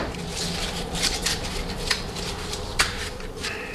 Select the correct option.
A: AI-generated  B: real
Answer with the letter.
A